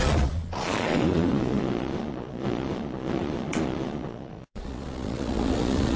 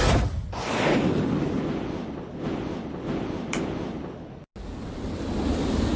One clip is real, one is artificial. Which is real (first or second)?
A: second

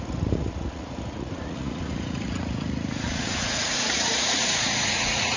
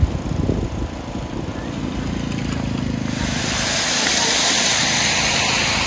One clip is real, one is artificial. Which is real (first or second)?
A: second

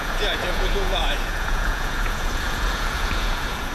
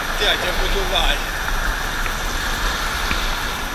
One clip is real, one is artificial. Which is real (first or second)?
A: second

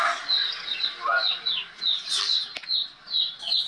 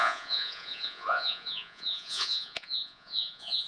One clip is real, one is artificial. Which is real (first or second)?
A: first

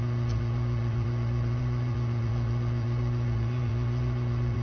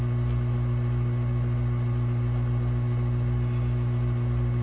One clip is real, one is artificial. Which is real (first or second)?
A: second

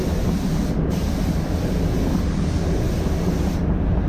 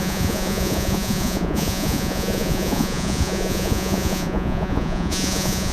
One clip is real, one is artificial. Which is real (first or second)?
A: first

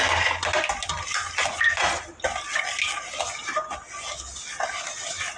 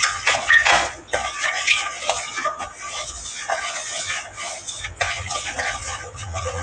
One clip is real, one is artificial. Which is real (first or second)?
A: first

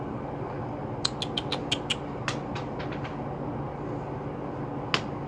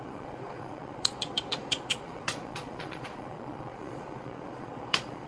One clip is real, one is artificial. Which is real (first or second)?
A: first